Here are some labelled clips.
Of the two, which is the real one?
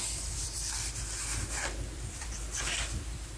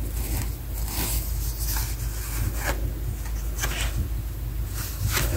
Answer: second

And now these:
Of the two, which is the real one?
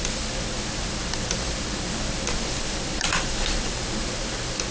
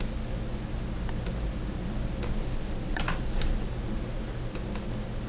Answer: second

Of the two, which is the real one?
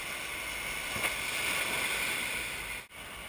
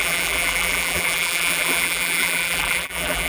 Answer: first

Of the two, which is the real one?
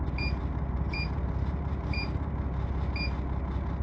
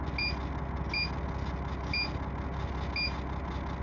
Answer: second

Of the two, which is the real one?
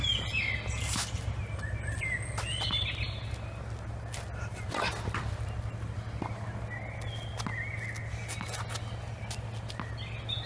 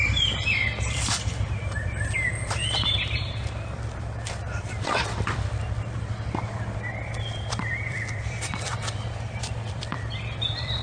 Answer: first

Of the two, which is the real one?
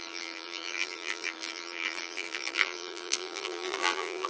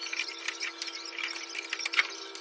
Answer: second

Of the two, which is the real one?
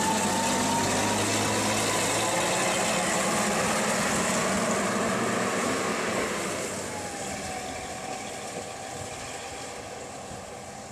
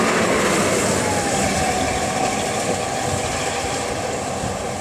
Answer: first